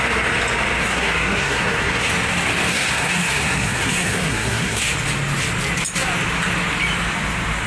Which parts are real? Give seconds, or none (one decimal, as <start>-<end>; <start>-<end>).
0.0-0.8; 2.1-2.7; 4.8-7.7